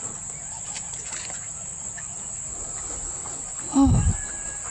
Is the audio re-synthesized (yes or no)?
no